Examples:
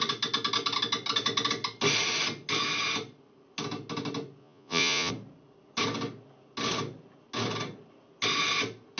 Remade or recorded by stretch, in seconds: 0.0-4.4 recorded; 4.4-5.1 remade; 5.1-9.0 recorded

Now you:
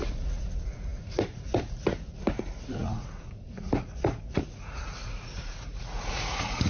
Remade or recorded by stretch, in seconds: 0.0-6.7 remade

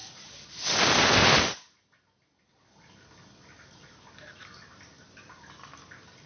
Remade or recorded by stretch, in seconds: 0.0-6.3 recorded